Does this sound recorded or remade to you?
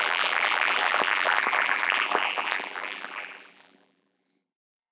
remade